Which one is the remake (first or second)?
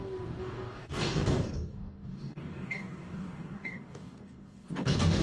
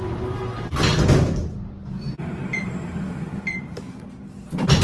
first